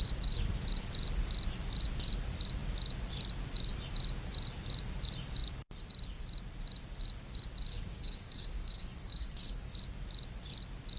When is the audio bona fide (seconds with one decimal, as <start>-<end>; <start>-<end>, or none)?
0.0-7.7; 9.7-11.0

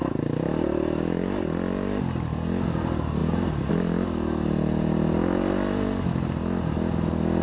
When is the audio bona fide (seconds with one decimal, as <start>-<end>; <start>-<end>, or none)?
0.0-7.4

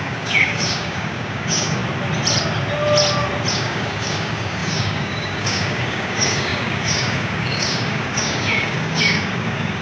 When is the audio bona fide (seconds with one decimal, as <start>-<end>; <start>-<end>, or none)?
1.8-3.5